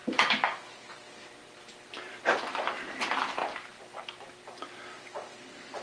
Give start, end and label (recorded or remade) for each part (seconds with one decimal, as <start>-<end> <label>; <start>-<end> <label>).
0.0-5.8 recorded

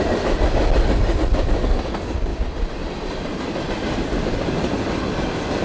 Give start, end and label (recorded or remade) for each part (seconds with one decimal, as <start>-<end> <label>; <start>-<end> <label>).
0.0-5.6 recorded

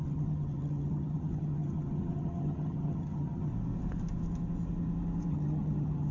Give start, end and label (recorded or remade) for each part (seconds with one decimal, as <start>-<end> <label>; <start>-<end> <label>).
0.0-3.5 remade; 3.5-5.3 recorded; 5.3-6.1 remade

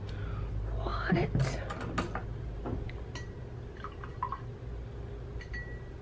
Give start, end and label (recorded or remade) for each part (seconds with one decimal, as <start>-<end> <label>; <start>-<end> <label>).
0.0-6.0 recorded

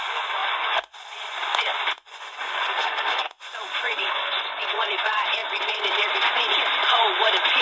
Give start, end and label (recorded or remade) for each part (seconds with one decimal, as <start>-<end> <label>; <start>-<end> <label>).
0.0-7.6 remade

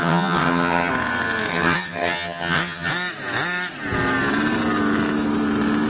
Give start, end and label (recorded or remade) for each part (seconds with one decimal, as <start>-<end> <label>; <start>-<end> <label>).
0.0-0.9 remade; 0.9-1.5 recorded; 1.5-2.9 remade; 2.9-5.9 recorded

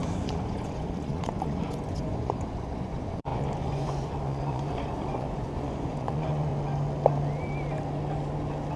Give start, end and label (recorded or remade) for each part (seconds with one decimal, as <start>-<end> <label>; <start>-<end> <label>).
0.0-6.5 remade; 6.5-8.8 recorded